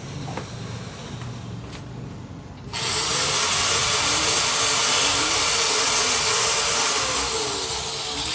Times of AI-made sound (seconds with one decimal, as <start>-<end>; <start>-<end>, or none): 3.8-4.4